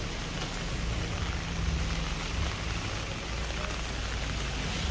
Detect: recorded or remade recorded